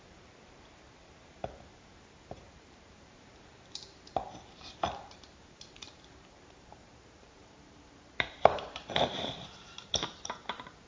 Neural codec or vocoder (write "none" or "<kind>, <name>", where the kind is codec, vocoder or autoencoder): vocoder, BigVGAN v2